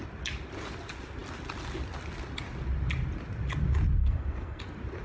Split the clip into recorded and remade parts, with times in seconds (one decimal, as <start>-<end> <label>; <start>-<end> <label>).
0.0-4.0 recorded; 4.0-4.6 remade; 4.6-5.0 recorded